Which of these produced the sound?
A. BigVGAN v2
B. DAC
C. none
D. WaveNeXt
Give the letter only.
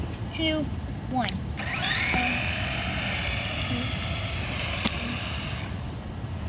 C